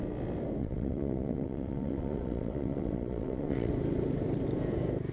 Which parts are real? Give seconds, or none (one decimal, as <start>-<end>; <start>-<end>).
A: 0.0-0.6; 3.7-5.1